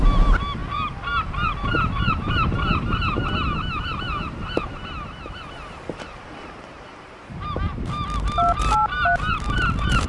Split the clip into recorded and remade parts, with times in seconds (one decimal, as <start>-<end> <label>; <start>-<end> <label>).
0.0-10.1 recorded